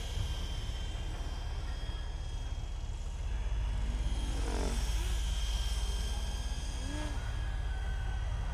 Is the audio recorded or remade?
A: recorded